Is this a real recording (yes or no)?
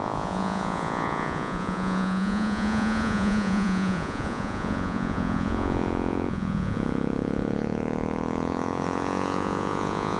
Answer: no